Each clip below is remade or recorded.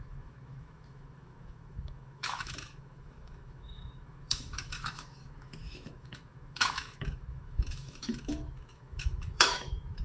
remade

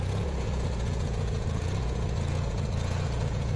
remade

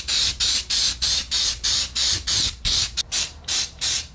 remade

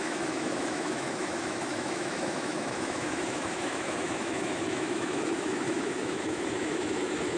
remade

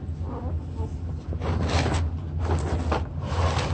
recorded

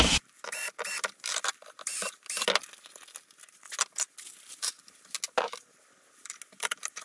recorded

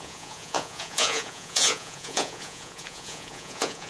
remade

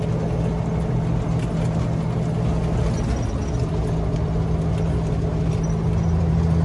recorded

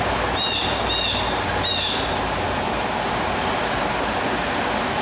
recorded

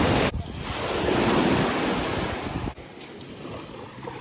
recorded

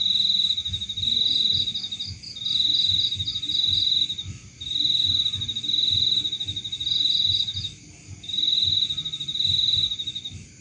recorded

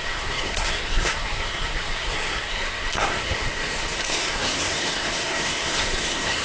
remade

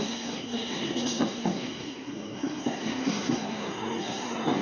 remade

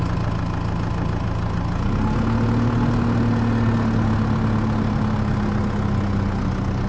recorded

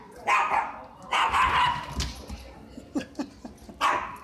recorded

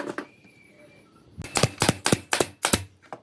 recorded